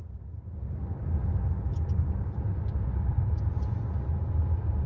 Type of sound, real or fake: real